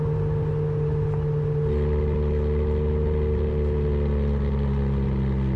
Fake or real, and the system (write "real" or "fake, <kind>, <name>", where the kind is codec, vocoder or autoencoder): real